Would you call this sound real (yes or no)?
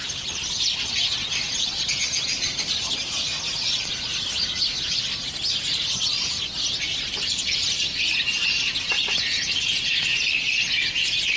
yes